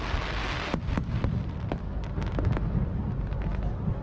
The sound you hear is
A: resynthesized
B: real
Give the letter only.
B